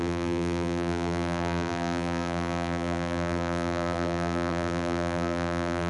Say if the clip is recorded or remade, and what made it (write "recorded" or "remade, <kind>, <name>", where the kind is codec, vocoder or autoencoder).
remade, vocoder, BigVGAN v2